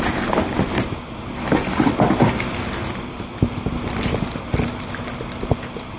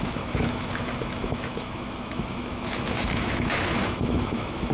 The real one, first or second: first